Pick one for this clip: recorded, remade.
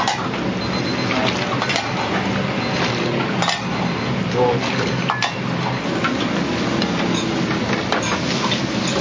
recorded